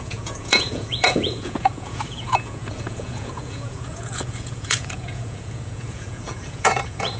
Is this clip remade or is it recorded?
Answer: remade